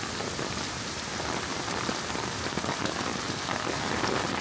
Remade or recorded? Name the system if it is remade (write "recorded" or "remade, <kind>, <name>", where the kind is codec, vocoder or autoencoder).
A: recorded